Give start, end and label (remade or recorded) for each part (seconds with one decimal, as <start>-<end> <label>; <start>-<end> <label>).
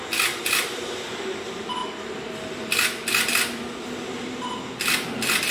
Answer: 0.0-5.5 recorded